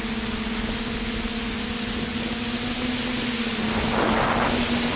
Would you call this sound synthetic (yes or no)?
no